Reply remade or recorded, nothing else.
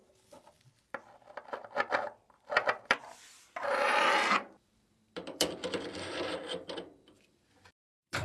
remade